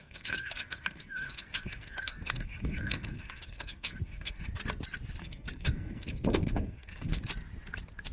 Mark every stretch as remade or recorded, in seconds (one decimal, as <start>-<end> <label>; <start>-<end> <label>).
0.0-4.5 remade; 4.5-5.2 recorded; 5.2-7.2 remade; 7.2-8.1 recorded